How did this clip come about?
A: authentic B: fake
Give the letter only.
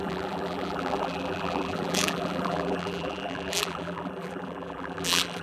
B